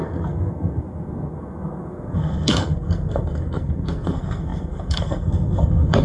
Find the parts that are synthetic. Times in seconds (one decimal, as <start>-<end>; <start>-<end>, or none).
0.0-6.0